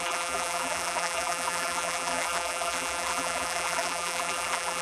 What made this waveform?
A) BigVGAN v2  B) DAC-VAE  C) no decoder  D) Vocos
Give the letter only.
A